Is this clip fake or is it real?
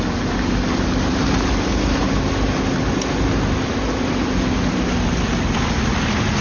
real